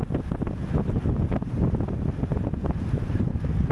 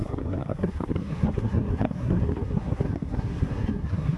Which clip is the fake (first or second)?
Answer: second